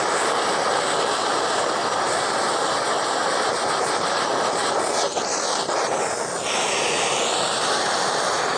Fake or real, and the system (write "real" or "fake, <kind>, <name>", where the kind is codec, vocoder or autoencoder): real